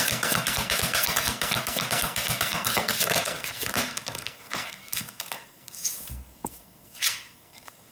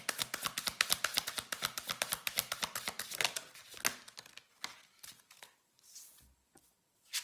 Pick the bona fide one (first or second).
second